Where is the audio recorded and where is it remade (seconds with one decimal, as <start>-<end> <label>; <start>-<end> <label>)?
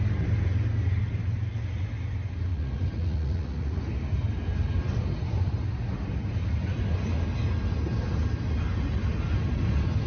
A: 0.0-2.5 recorded; 2.5-3.8 remade; 3.8-10.1 recorded